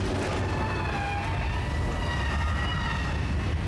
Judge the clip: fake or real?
real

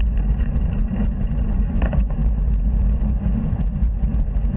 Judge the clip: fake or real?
fake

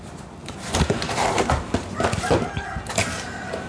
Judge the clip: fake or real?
real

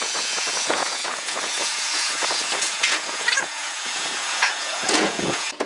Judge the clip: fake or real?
fake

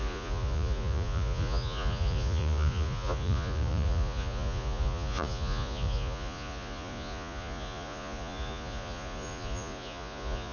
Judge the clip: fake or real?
fake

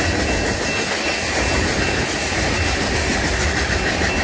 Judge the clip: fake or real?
real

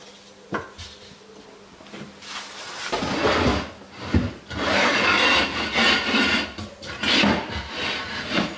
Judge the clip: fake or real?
real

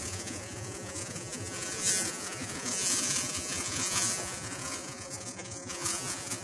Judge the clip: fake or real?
fake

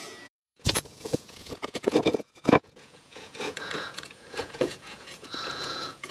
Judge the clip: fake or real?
fake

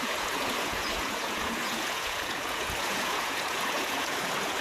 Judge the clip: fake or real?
fake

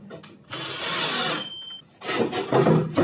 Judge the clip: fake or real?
real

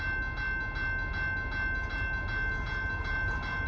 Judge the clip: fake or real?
real